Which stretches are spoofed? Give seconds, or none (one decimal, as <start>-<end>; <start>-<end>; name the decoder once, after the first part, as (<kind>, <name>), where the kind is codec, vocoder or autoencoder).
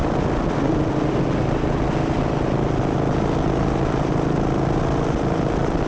none